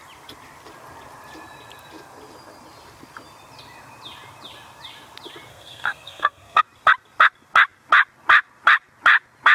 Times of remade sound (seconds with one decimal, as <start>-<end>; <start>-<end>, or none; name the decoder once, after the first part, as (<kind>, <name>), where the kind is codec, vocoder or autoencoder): 5.5-6.6 (codec, SNAC)